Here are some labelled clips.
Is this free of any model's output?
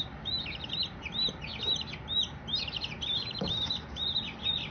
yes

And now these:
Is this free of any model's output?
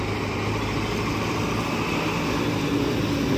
yes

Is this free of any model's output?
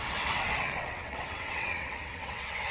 no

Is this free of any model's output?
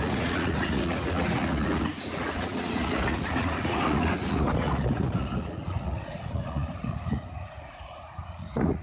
no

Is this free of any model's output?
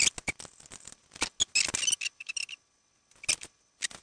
yes